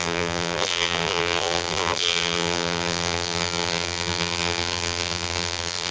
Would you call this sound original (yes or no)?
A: no